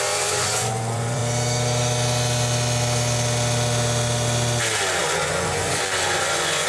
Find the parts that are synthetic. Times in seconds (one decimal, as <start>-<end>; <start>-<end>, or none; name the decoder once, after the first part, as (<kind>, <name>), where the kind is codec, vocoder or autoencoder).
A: 0.0-1.2 (vocoder, Vocos); 5.0-6.7